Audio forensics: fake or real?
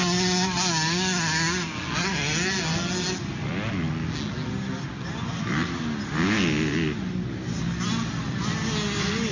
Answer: real